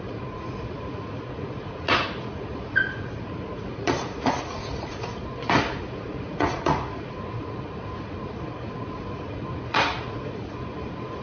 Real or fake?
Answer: fake